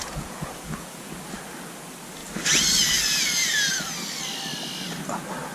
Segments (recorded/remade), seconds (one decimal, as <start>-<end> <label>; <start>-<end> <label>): 0.0-1.1 remade; 1.1-5.5 recorded